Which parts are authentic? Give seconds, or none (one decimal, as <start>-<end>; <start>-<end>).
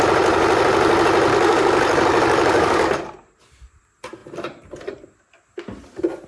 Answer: 0.0-1.3; 3.0-6.3